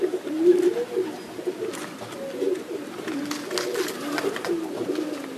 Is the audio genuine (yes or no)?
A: yes